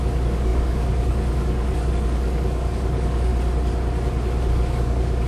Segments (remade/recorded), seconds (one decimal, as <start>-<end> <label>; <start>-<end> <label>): 0.0-3.3 remade; 3.3-4.5 recorded; 4.5-5.3 remade

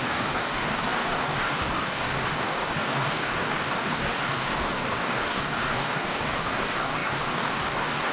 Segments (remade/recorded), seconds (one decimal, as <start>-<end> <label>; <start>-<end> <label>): 0.0-8.1 remade